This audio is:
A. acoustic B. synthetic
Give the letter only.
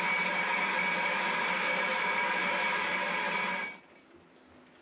A